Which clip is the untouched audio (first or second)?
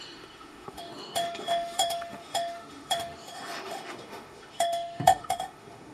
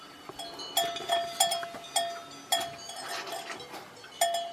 second